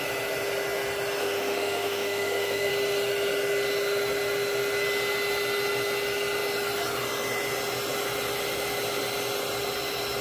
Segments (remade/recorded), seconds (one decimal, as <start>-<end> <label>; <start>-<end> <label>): 0.0-1.2 recorded; 1.2-2.7 remade; 2.7-10.2 recorded